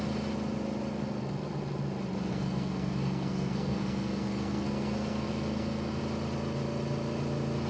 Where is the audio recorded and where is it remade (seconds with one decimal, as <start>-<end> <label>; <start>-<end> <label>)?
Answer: 0.0-2.3 recorded; 2.3-6.0 remade; 6.0-7.7 recorded